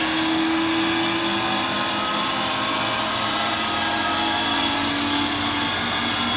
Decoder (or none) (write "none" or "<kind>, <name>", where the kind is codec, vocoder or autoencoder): none